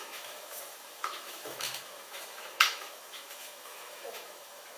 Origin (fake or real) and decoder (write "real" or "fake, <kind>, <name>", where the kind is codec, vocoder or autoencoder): fake, autoencoder, DAC-VAE